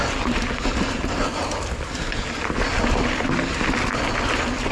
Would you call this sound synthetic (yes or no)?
no